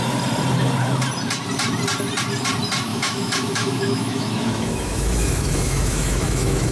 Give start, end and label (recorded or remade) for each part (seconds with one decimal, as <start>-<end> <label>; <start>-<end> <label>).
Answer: 0.0-2.9 recorded; 2.9-6.7 remade